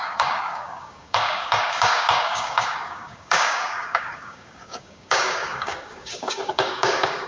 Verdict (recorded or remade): remade